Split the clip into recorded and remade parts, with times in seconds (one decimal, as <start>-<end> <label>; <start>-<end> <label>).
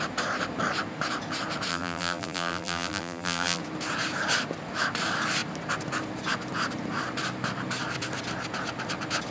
0.0-1.7 recorded; 1.7-3.6 remade; 3.6-9.3 recorded